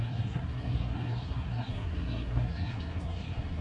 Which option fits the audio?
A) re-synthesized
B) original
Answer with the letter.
A